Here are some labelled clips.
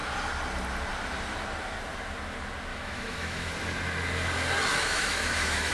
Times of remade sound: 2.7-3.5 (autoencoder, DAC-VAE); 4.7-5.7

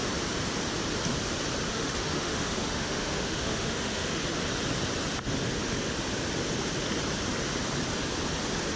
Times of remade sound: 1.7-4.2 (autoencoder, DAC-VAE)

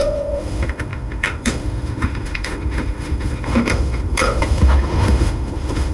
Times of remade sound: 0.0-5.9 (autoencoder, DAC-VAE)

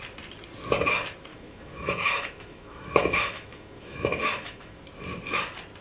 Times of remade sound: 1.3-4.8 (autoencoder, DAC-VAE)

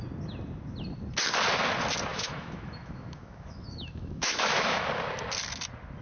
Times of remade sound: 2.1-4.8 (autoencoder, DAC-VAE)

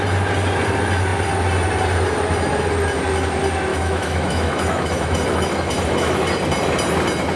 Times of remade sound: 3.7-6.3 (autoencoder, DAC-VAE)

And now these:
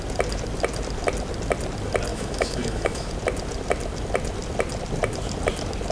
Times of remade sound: 2.1-3.1 (autoencoder, DAC-VAE)